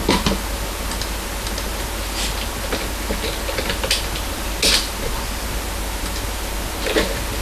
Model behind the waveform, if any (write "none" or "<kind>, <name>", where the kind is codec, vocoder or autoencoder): none